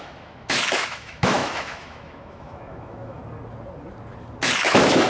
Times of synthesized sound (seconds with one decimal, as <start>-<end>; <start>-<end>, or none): 0.0-3.2; 4.5-5.1